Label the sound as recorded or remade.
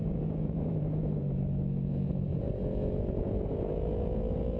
remade